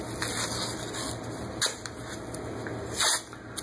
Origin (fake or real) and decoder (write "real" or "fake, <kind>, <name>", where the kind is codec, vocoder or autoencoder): real